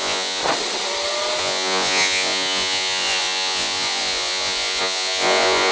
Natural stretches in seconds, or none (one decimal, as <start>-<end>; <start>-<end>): 0.4-1.4